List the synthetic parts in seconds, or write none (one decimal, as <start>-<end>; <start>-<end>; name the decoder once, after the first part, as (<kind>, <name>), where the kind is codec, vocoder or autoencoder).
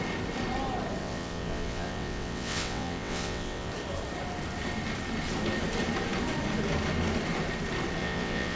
1.0-3.7 (vocoder, WaveNeXt); 8.0-8.6